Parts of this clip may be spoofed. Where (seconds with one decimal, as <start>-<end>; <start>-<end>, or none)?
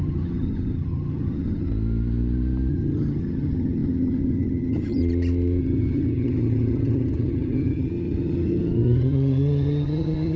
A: 0.0-1.7; 2.7-5.0; 5.6-10.4